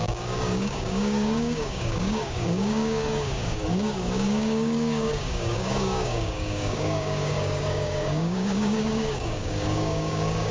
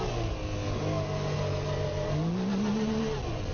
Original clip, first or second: second